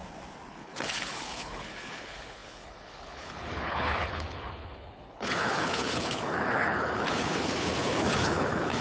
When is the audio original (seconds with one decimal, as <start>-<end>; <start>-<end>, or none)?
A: 0.0-0.5

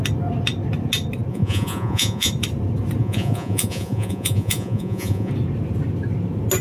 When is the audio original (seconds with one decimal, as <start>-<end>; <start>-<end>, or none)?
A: 0.0-1.3; 2.3-3.0; 5.3-6.6